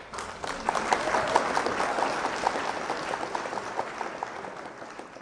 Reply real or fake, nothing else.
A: real